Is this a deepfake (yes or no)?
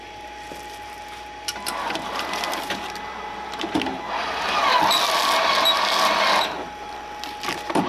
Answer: no